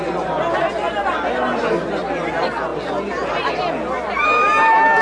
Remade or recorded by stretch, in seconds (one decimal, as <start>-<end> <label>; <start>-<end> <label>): 0.0-5.0 recorded